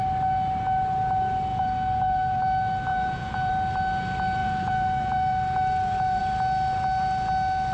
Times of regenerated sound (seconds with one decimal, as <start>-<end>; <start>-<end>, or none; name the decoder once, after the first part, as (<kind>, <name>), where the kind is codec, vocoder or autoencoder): 1.5-2.4 (vocoder, Vocos); 2.9-3.5; 4.4-6.2